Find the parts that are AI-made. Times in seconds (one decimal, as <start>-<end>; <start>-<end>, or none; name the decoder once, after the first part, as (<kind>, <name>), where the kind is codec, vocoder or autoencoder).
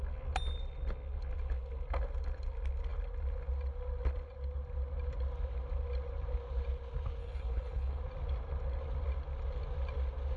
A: 7.2-8.0 (codec, HILCodec)